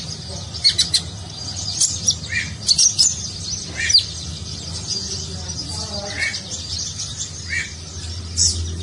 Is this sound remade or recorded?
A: recorded